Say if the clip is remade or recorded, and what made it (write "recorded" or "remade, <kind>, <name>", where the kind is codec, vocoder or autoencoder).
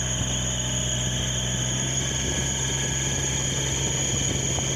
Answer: recorded